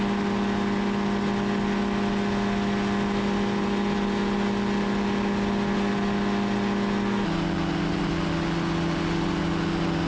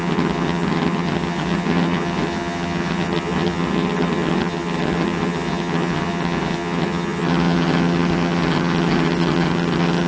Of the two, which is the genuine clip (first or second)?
first